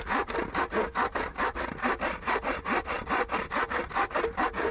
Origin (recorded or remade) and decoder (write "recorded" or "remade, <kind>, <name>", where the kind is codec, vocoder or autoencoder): recorded